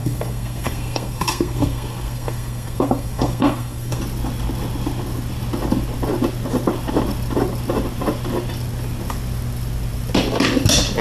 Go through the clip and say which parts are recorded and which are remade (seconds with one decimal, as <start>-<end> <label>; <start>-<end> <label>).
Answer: 0.0-4.0 remade; 4.0-11.0 recorded